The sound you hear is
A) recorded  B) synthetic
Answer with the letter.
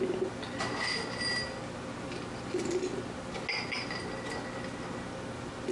A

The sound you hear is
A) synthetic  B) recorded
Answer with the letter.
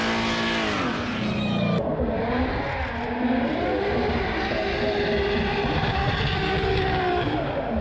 B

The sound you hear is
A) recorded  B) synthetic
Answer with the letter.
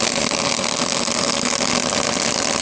A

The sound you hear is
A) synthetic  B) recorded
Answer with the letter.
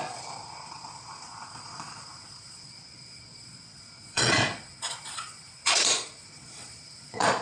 A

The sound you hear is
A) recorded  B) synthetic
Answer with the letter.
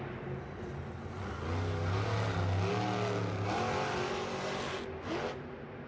A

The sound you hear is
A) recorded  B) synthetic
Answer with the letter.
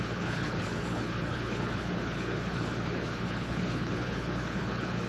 B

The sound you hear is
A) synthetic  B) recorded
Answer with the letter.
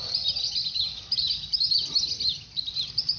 B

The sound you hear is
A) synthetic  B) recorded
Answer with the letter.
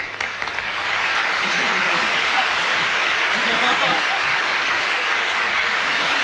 A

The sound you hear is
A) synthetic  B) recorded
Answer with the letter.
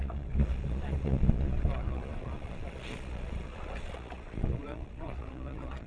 A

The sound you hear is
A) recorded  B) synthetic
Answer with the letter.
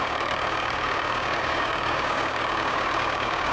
B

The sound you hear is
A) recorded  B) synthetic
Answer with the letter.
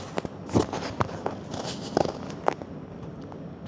A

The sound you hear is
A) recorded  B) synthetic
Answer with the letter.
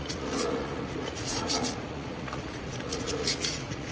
B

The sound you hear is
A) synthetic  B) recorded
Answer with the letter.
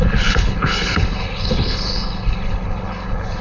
A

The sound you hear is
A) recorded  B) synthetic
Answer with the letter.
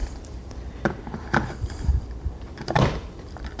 B